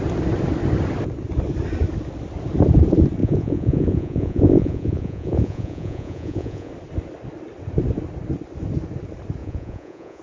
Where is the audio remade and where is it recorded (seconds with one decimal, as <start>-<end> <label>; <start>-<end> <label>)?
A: 0.0-3.2 recorded; 3.2-6.7 remade; 6.7-9.4 recorded; 9.4-10.2 remade